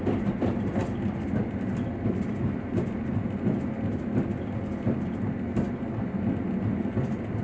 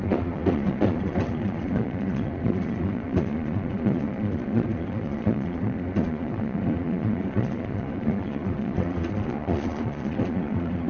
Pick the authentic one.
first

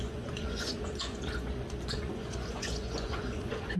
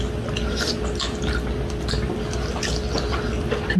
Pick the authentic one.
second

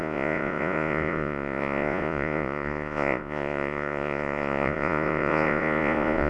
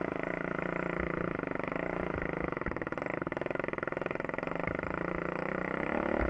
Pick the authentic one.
second